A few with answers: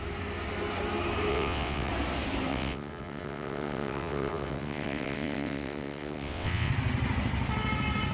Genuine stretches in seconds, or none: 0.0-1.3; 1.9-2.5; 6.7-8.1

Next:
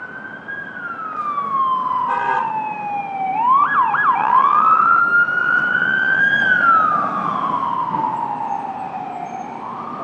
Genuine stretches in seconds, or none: 0.0-1.8; 2.5-4.2; 5.0-5.4; 6.2-10.0

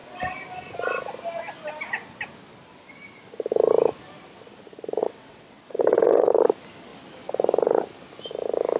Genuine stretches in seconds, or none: 0.0-5.0; 6.3-8.8